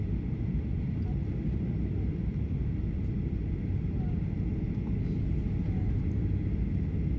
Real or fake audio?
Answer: real